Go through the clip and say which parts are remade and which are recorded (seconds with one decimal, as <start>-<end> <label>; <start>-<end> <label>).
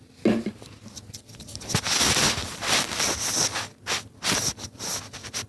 0.0-2.4 recorded; 2.4-3.3 remade; 3.3-5.5 recorded